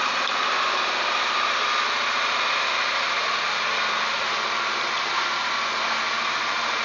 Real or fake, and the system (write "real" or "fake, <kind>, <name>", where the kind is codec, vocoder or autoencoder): real